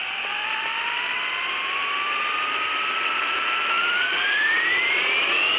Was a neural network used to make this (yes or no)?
no